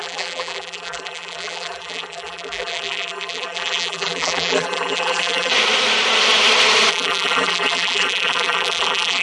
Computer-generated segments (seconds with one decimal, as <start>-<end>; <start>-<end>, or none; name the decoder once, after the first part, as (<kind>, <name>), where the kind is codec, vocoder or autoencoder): 0.0-5.5 (vocoder, BigVGAN v2); 6.9-9.2